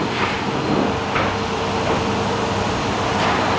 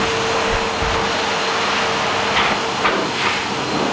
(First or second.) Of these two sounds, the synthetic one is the first